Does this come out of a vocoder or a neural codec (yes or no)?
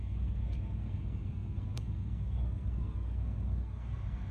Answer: yes